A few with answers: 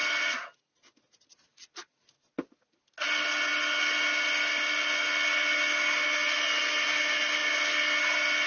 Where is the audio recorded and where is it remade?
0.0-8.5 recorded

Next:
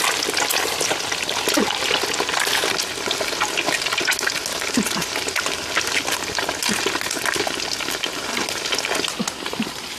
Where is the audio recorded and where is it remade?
0.0-10.0 recorded